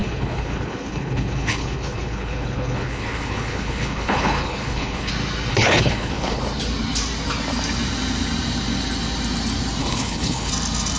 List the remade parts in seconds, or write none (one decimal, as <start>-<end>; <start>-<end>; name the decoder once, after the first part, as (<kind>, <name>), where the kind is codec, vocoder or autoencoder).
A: 0.0-5.1 (codec, HILCodec); 5.5-6.4; 9.8-10.5